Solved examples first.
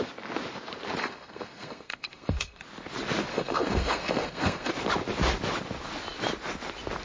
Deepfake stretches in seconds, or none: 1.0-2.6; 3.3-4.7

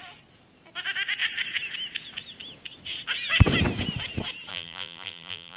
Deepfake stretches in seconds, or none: 4.5-5.6

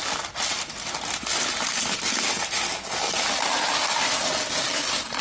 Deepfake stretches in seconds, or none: none

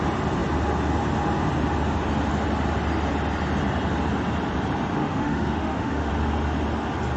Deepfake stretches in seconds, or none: 5.0-6.1

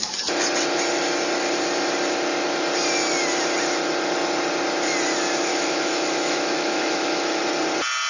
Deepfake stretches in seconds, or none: 5.5-7.4

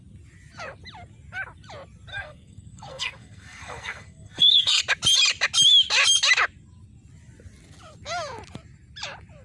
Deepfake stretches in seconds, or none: 2.1-4.8